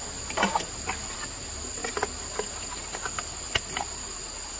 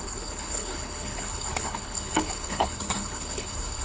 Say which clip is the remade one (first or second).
second